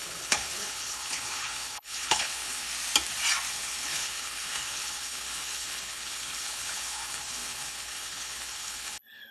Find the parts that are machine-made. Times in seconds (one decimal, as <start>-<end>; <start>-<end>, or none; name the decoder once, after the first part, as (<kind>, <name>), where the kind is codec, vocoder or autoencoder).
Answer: 0.0-2.7 (codec, HILCodec); 3.5-9.3